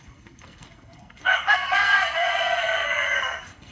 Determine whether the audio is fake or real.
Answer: fake